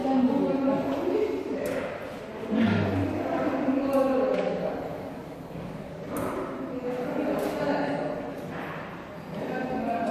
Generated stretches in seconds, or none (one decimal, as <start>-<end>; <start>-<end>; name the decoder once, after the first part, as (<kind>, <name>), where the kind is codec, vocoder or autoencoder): 4.9-6.0 (codec, DAC)